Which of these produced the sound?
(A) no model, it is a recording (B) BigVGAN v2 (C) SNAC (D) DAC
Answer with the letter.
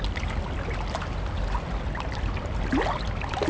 A